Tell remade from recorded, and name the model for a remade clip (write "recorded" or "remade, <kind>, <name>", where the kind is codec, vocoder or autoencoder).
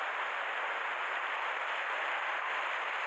recorded